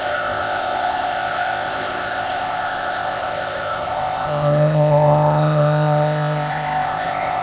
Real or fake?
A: fake